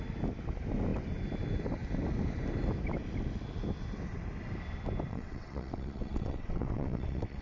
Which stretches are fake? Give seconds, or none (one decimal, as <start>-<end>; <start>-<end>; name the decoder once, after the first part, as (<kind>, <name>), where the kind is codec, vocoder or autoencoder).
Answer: 5.1-7.4 (vocoder, WaveNeXt)